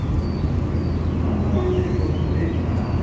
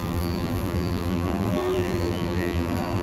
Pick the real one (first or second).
first